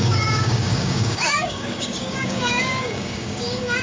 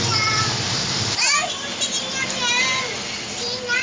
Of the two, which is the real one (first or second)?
second